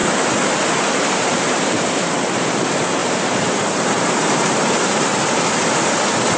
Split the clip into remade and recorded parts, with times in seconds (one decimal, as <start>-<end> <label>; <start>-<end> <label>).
0.0-2.1 remade; 2.1-3.0 recorded; 3.0-6.0 remade; 6.0-6.4 recorded